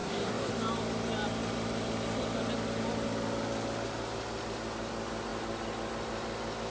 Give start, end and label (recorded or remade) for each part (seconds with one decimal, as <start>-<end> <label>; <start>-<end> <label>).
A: 0.0-0.5 remade; 0.5-6.7 recorded